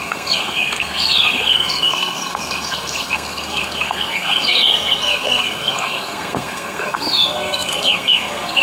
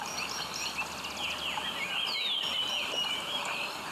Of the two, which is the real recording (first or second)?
second